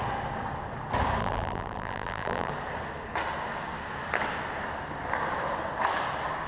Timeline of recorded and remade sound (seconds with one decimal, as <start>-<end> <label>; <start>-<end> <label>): 0.0-1.2 recorded; 1.2-2.5 remade; 2.5-6.5 recorded